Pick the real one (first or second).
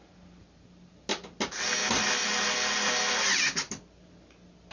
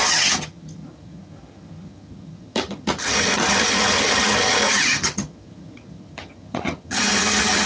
first